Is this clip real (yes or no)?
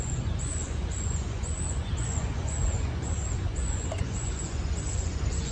no